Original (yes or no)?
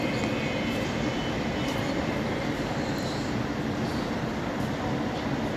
no